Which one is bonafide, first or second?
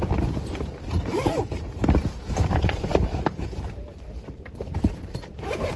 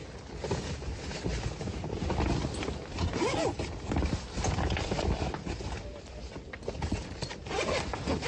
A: second